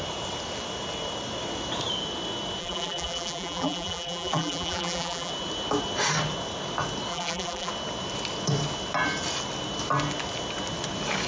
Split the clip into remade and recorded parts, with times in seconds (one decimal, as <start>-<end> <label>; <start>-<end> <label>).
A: 0.0-2.6 recorded; 2.6-5.3 remade; 5.3-7.1 recorded; 7.1-7.7 remade; 7.7-11.3 recorded